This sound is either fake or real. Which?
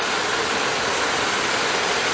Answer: real